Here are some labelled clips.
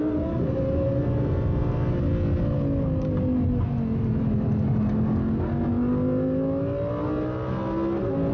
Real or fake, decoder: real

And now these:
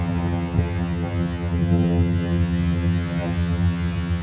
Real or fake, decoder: fake, vocoder, HiFi-GAN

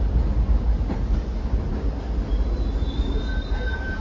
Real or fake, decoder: real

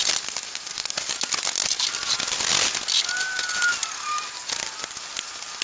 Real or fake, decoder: real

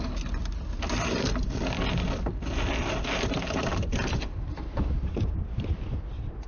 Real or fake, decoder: real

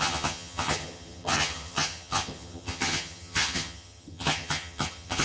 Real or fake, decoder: fake, vocoder, HiFi-GAN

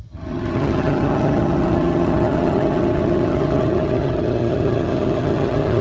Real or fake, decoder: fake, vocoder, HiFi-GAN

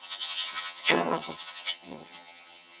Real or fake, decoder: fake, vocoder, HiFi-GAN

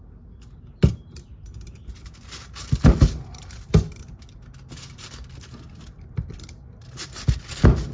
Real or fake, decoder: real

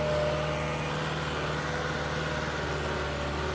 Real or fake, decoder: real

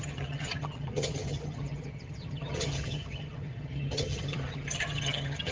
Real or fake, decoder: fake, vocoder, HiFi-GAN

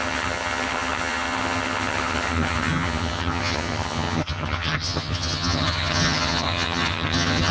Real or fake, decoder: fake, vocoder, HiFi-GAN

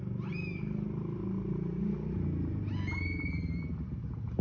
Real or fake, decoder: real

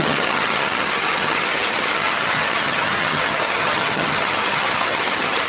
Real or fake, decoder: fake, vocoder, HiFi-GAN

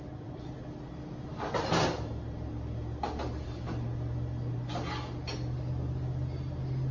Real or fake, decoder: real